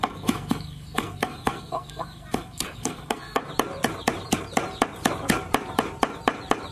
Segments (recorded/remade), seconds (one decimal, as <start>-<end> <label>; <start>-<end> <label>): 0.0-3.4 remade; 3.4-6.7 recorded